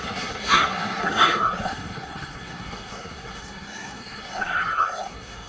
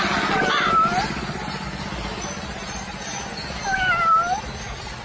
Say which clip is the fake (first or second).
first